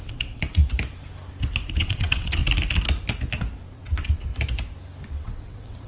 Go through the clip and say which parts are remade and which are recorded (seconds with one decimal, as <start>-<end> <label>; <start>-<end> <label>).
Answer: 0.0-0.6 remade; 0.6-1.7 recorded; 1.7-2.4 remade; 2.4-3.7 recorded; 3.7-4.3 remade; 4.3-5.1 recorded; 5.1-5.9 remade

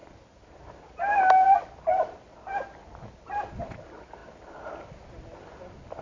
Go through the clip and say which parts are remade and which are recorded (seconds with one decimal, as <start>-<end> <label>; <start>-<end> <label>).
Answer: 0.0-6.0 recorded

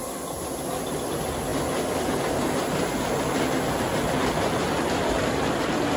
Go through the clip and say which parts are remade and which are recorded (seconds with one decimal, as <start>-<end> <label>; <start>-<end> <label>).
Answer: 0.0-6.0 recorded

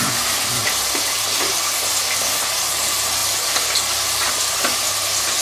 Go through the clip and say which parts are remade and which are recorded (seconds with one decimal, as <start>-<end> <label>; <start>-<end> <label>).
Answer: 0.0-5.4 recorded

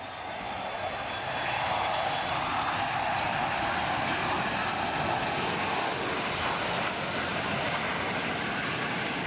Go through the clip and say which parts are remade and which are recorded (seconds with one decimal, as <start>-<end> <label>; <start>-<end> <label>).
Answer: 0.0-9.3 recorded

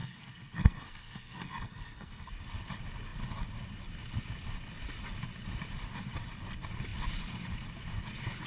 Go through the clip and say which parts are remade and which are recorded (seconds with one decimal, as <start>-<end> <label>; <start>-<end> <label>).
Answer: 0.0-2.3 remade; 2.3-8.5 recorded

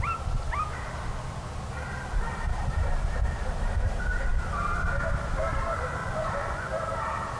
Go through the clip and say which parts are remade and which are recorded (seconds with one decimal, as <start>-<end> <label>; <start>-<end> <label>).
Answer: 0.0-6.0 recorded; 6.0-6.7 remade; 6.7-7.4 recorded

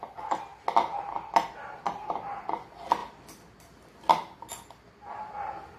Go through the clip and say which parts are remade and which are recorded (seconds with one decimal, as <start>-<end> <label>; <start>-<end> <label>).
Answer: 0.0-5.8 recorded